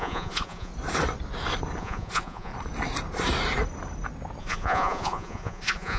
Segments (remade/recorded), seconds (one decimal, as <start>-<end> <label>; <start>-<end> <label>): 0.0-0.7 remade; 0.7-1.8 recorded; 1.8-2.5 remade; 2.5-4.4 recorded; 4.4-6.0 remade